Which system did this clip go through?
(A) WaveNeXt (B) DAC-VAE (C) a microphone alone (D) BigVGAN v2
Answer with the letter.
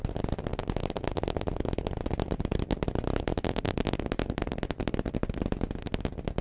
D